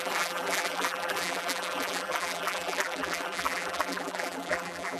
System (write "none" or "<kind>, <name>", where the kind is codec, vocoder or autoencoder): vocoder, BigVGAN v2